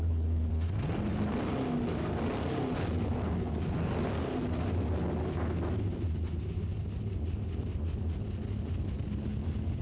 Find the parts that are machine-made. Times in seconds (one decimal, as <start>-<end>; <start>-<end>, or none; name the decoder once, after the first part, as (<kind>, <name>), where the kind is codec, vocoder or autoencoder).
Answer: 0.0-0.5 (codec, HILCodec)